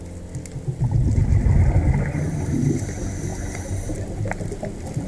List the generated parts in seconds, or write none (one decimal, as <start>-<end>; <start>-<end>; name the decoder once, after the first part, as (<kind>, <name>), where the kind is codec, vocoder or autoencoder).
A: none